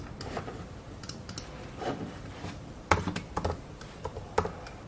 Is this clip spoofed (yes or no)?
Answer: yes